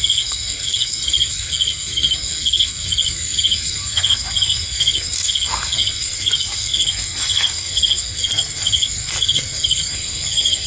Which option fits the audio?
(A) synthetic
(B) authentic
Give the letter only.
A